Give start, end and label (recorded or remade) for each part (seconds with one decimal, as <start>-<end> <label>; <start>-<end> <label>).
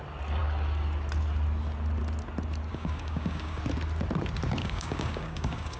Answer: 0.0-2.7 recorded; 2.7-3.6 remade; 3.6-4.6 recorded; 4.6-5.8 remade